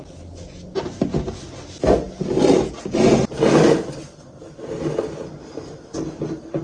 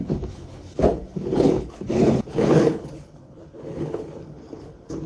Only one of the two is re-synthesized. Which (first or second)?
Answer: second